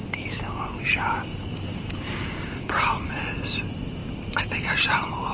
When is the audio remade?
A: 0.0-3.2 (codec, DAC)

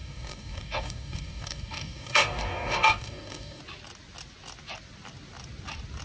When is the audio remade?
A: 0.0-3.6 (codec, DAC)

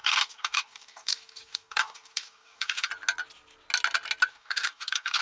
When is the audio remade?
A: 0.0-2.9 (codec, DAC); 4.3-5.2

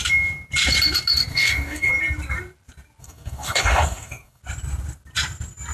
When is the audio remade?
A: 1.3-1.9 (codec, DAC); 3.0-4.4

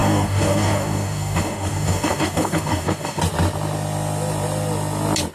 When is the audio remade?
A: 0.0-3.2 (codec, DAC)